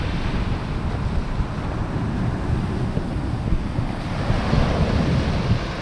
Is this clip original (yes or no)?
yes